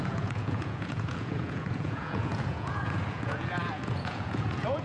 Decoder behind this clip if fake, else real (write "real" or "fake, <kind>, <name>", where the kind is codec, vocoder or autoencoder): fake, vocoder, Vocos